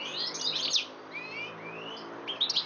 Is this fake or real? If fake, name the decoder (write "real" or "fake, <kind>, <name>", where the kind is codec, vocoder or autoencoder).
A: real